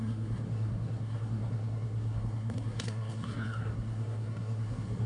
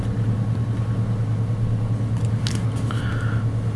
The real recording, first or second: second